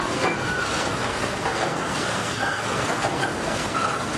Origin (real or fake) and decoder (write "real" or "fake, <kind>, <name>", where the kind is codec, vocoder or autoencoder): fake, codec, SNAC